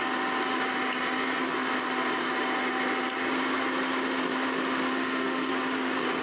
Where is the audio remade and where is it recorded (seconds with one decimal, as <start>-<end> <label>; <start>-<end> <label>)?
0.0-4.9 recorded; 4.9-5.5 remade; 5.5-6.2 recorded